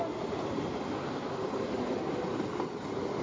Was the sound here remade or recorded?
recorded